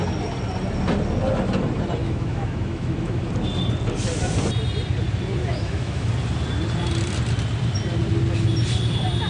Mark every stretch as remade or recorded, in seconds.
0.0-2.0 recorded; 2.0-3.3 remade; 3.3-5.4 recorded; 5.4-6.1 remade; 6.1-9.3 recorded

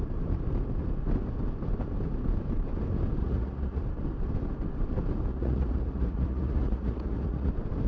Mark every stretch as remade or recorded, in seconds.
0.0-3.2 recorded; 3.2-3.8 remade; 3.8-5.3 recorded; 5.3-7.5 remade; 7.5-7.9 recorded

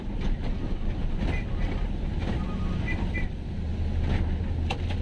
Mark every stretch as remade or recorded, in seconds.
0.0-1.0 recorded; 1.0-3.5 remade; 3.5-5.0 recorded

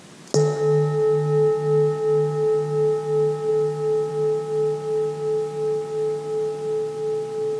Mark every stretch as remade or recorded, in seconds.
0.0-7.6 recorded

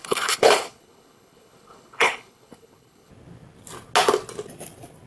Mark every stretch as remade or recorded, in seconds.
0.0-3.1 remade; 3.1-5.1 recorded

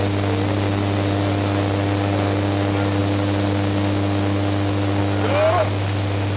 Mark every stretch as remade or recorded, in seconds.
0.0-6.4 recorded